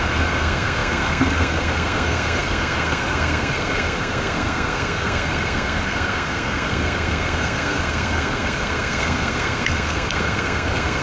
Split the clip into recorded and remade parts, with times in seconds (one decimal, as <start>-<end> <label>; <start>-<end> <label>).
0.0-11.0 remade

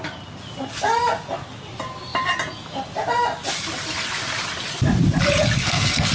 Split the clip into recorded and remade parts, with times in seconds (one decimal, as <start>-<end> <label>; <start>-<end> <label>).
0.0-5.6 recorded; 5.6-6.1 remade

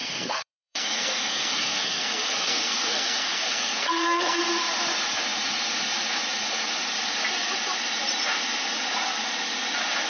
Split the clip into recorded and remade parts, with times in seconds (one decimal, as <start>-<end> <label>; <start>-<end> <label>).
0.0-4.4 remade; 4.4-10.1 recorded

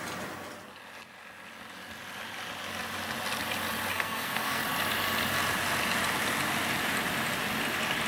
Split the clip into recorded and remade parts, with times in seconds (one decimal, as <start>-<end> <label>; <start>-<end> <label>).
0.0-3.9 recorded; 3.9-4.6 remade; 4.6-8.1 recorded

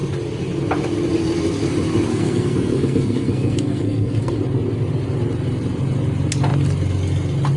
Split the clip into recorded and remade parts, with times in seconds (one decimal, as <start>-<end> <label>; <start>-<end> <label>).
0.0-2.1 recorded; 2.1-4.4 remade; 4.4-7.6 recorded

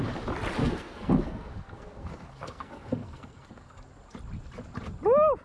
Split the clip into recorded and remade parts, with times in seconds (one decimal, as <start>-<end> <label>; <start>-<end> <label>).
0.0-0.6 recorded; 0.6-3.8 remade; 3.8-5.4 recorded

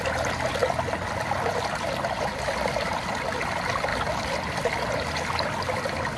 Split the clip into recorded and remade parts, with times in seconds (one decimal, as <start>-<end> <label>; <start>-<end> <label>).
0.0-6.2 recorded